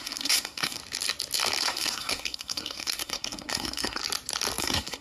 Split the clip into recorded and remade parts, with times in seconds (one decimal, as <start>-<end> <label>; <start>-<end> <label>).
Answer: 0.0-0.8 remade; 0.8-1.6 recorded; 1.6-4.0 remade; 4.0-4.6 recorded; 4.6-5.0 remade